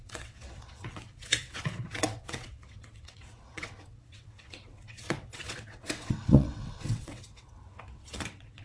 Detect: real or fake fake